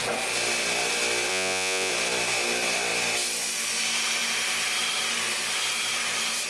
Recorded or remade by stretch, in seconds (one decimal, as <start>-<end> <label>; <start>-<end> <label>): 0.0-1.3 recorded; 1.3-1.9 remade; 1.9-6.5 recorded